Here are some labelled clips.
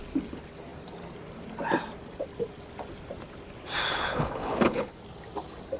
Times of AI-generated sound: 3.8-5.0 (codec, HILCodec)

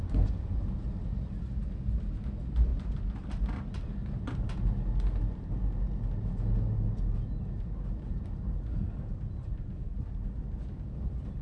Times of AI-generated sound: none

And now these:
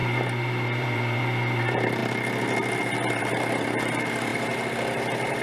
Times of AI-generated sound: 0.0-2.0 (vocoder, BigVGAN v2); 2.8-5.4